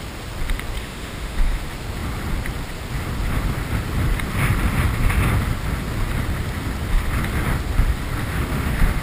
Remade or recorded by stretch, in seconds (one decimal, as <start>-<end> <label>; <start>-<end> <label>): 0.0-0.8 recorded; 0.8-1.6 remade; 1.6-8.2 recorded; 8.2-9.0 remade